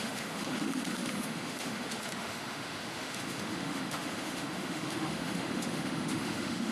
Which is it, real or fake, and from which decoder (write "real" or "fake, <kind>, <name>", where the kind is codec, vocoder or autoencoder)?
fake, autoencoder, DAC-VAE